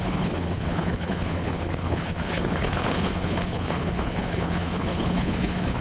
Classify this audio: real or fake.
fake